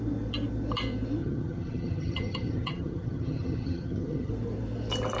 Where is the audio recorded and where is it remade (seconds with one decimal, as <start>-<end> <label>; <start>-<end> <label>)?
0.0-1.2 recorded; 1.2-4.3 remade; 4.3-5.2 recorded